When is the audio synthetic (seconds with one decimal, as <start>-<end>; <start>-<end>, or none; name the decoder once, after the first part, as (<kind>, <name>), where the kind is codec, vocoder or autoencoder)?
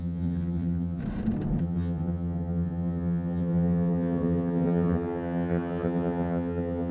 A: 0.0-1.0 (vocoder, HiFi-GAN); 1.6-6.9